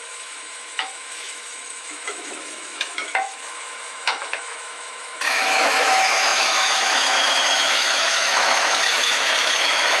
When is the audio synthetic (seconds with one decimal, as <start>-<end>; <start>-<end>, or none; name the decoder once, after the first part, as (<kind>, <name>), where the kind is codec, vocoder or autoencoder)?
0.0-10.0 (autoencoder, DAC-VAE)